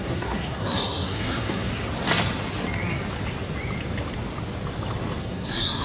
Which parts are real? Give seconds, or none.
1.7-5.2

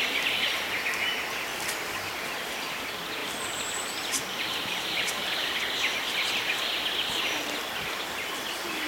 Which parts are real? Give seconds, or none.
0.0-3.2; 5.6-8.9

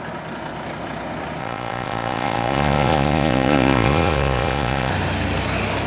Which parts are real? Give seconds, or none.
0.0-1.4; 4.9-5.9

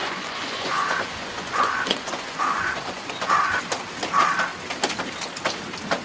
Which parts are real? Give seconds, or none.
3.6-6.0

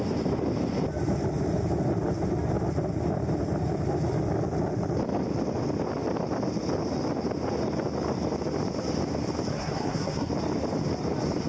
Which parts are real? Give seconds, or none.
0.0-9.5; 10.3-11.5

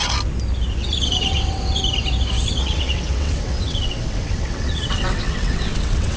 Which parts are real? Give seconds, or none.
0.0-0.8; 1.8-2.4

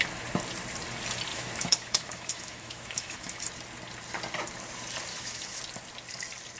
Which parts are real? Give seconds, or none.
0.0-1.3; 3.4-5.1; 5.6-6.6

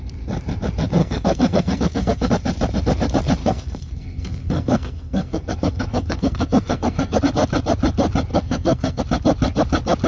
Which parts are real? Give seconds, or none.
0.0-1.0; 2.3-3.4; 7.2-8.3; 9.0-10.1